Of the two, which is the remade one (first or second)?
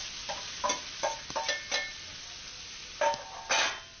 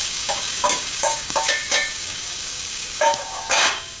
second